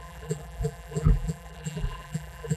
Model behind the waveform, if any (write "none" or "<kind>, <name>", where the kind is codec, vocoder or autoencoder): vocoder, BigVGAN v2